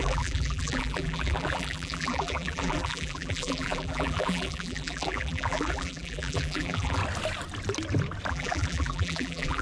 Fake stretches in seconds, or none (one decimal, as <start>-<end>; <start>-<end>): 0.0-7.0; 8.3-9.6